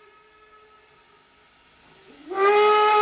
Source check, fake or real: real